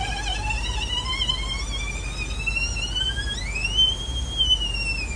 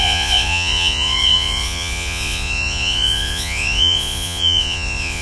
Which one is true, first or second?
first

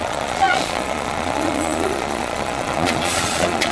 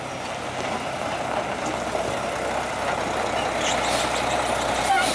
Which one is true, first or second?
second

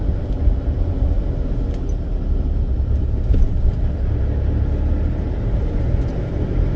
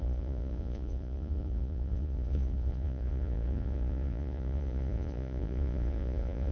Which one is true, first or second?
first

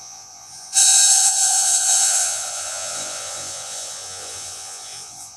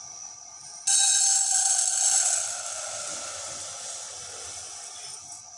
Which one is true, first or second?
second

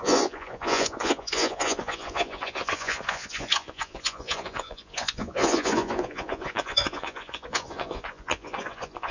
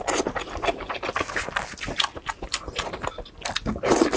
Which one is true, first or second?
second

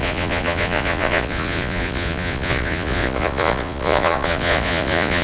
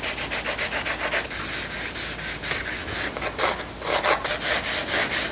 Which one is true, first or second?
second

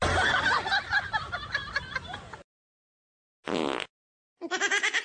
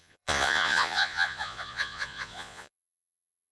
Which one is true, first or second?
first